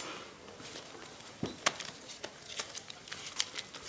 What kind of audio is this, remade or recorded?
recorded